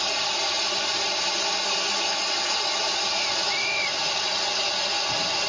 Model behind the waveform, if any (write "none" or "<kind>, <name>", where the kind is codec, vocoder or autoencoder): none